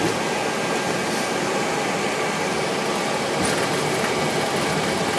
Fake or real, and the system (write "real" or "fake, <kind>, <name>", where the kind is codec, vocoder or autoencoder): real